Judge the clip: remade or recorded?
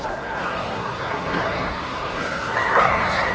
remade